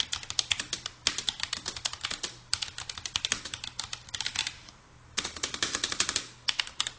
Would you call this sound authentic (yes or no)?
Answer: yes